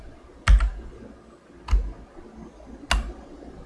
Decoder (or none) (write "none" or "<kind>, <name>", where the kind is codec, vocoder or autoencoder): none